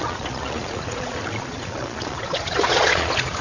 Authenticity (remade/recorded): remade